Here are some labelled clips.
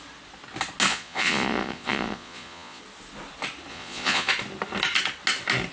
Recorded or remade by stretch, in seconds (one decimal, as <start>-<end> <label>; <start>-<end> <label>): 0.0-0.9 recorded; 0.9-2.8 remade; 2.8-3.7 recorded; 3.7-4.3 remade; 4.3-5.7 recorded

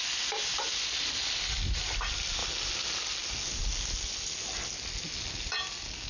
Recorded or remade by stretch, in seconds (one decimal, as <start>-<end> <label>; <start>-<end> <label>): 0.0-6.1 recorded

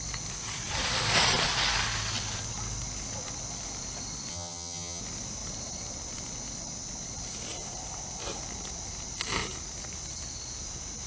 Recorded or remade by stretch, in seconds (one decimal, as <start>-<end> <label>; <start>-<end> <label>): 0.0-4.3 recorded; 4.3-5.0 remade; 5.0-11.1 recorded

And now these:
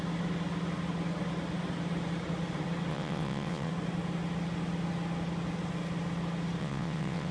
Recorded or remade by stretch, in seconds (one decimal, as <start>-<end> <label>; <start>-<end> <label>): 0.0-2.9 recorded; 2.9-3.7 remade; 3.7-6.6 recorded; 6.6-7.3 remade

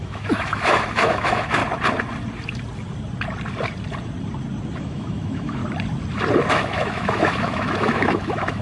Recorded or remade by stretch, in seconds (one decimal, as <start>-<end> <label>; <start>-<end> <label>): 0.0-1.6 remade; 1.6-4.8 recorded; 4.8-5.6 remade; 5.6-6.5 recorded; 6.5-8.6 remade

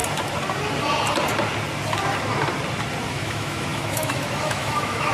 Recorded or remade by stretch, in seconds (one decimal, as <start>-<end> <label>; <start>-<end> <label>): 0.0-3.1 recorded; 3.1-5.1 remade